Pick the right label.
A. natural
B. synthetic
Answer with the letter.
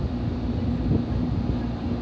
A